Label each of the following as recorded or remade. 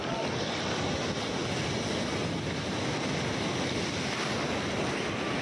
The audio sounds recorded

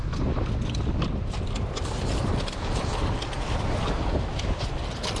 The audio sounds recorded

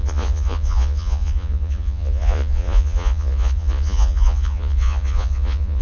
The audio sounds remade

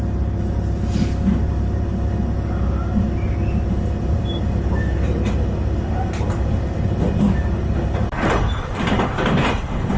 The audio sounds recorded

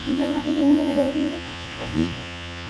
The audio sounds remade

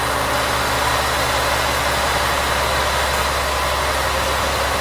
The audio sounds recorded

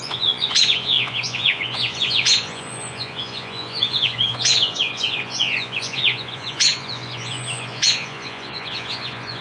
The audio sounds remade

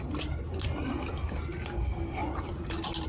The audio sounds recorded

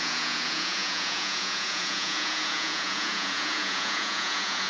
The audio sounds remade